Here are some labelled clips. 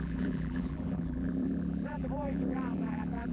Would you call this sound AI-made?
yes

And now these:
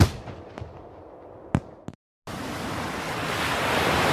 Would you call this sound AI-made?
no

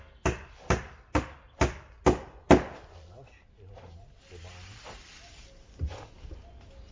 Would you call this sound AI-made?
no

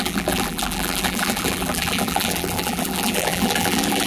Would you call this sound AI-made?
yes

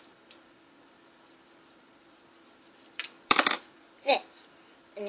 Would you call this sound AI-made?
yes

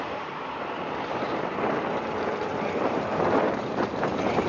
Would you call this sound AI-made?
yes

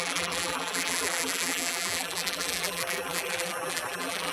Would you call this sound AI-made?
yes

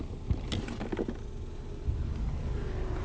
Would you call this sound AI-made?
no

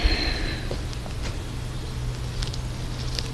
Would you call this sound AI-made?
no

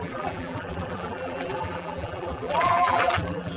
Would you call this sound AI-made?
yes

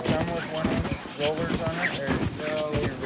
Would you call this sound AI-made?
no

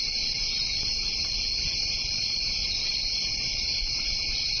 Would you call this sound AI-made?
yes